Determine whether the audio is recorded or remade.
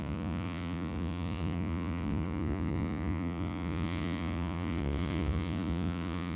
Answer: remade